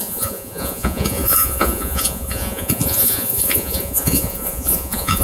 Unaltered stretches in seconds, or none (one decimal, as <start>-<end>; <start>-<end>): none